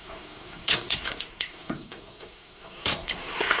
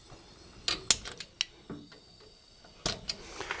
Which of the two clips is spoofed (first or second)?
first